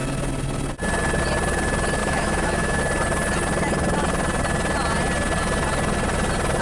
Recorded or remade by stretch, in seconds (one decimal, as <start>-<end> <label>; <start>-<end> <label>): 0.0-2.0 recorded; 2.0-2.8 remade; 2.8-6.6 recorded